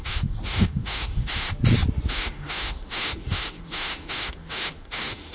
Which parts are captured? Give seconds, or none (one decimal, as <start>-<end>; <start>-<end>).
1.5-2.1